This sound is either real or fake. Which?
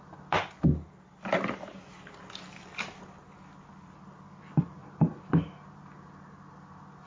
real